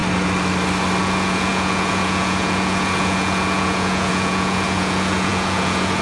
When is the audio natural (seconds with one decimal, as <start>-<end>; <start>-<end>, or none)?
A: 0.0-1.0